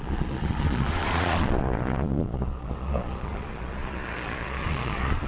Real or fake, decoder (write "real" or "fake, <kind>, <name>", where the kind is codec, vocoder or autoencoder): fake, vocoder, Vocos